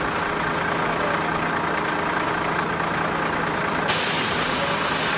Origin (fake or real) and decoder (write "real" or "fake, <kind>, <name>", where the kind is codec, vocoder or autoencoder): real